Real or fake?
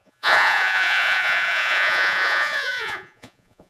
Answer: fake